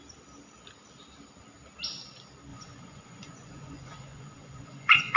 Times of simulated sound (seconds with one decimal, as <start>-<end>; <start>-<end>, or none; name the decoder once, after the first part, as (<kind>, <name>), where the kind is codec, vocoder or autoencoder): 2.5-5.2 (vocoder, Vocos)